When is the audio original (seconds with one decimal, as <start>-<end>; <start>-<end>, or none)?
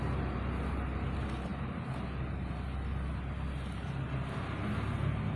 0.0-5.4